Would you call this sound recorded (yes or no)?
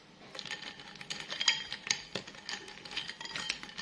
yes